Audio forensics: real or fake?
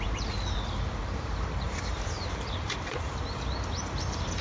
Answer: fake